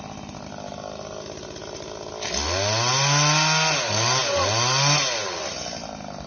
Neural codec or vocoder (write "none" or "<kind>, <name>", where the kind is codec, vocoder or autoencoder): none